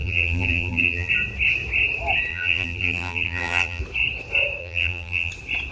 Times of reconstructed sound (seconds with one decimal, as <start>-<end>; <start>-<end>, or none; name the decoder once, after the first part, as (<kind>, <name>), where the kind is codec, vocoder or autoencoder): 0.0-1.1 (vocoder, BigVGAN v2); 2.3-3.8; 4.6-5.3